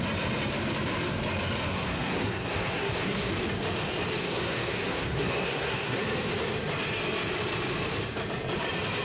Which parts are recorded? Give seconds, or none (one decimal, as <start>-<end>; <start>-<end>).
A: 0.0-1.7; 3.3-4.2; 6.0-9.0